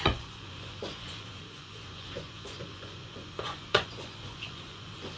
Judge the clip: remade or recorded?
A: remade